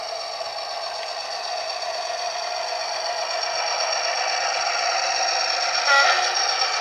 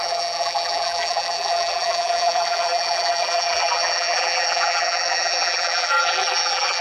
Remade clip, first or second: second